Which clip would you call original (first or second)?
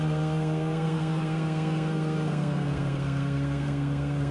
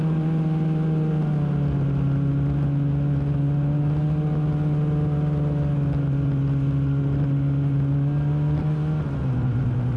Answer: second